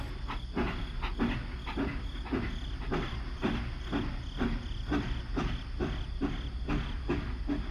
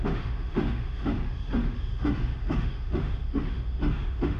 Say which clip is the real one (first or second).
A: first